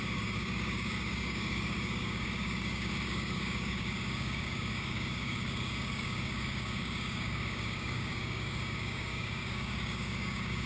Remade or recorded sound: remade